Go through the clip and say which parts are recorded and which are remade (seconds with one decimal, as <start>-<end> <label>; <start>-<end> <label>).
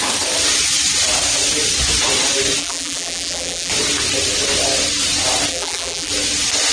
0.0-2.6 recorded; 2.6-3.7 remade; 3.7-5.5 recorded; 5.5-6.1 remade; 6.1-6.7 recorded